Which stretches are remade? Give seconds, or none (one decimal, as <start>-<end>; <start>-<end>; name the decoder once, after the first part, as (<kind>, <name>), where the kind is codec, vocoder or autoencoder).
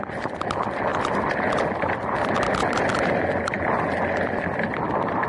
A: none